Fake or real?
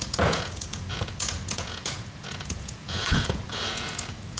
fake